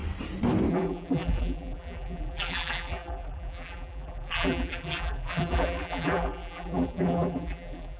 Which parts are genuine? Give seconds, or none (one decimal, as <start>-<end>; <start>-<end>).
0.0-0.7